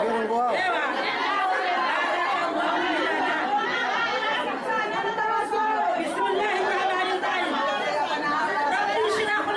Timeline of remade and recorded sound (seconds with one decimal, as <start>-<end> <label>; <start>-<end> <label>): 0.0-9.6 recorded